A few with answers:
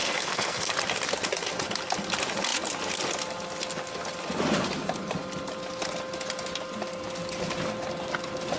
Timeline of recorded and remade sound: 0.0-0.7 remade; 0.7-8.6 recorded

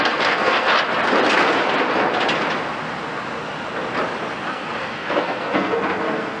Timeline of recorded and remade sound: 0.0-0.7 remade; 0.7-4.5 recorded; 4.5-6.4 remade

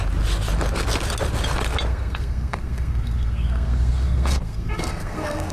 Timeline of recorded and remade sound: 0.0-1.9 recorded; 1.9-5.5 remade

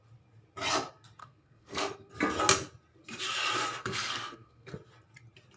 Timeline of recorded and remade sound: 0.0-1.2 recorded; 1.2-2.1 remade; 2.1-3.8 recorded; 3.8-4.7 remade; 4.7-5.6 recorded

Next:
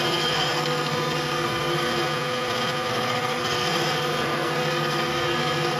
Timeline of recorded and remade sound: 0.0-1.9 remade; 1.9-2.9 recorded; 2.9-5.8 remade

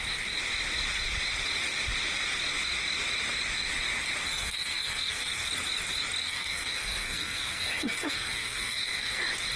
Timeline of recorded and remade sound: 0.0-4.3 recorded; 4.3-5.5 remade; 5.5-6.2 recorded; 6.2-9.2 remade; 9.2-9.6 recorded